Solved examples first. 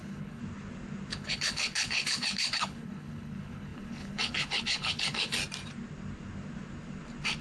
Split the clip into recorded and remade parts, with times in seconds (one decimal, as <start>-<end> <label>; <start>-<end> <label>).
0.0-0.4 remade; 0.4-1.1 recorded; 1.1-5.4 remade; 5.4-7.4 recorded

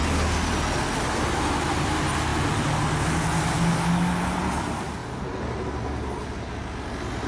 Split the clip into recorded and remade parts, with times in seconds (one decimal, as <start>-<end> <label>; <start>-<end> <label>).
0.0-7.3 recorded

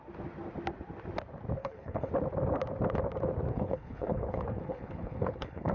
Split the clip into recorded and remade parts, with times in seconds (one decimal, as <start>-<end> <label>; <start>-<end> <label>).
0.0-1.6 recorded; 1.6-2.1 remade; 2.1-3.5 recorded; 3.5-5.7 remade